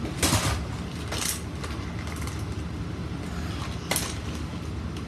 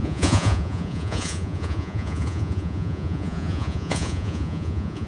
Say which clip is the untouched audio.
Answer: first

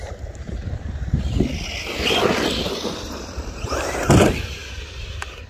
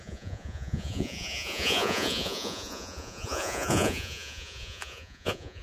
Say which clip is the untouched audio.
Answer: first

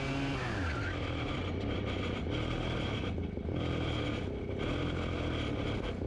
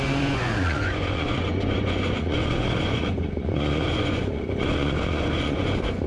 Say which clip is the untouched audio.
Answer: first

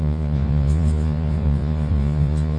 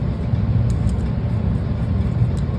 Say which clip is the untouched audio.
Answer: second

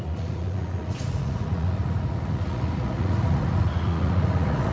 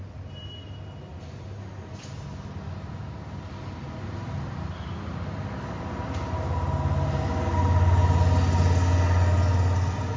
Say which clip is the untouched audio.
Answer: second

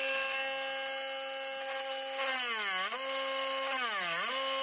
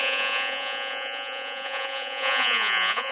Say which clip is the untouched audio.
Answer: first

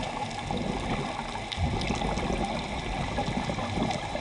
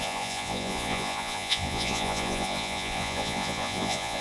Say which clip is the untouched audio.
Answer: first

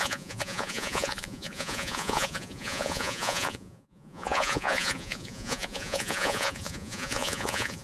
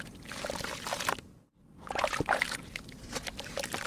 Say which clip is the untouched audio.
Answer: second